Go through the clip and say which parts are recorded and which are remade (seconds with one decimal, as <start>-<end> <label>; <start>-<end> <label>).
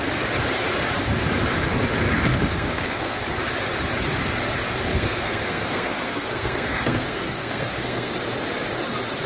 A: 0.0-2.3 recorded; 2.3-3.1 remade; 3.1-4.9 recorded; 4.9-8.1 remade; 8.1-9.3 recorded